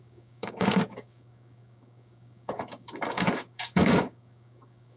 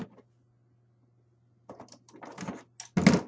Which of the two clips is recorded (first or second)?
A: second